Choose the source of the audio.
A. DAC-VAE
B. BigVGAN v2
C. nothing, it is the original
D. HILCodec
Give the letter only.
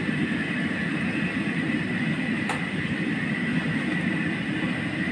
C